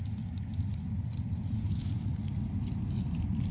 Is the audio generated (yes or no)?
no